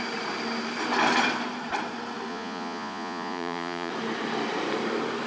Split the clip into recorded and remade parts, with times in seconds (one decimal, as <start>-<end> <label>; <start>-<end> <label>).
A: 0.0-2.3 recorded; 2.3-3.9 remade; 3.9-5.3 recorded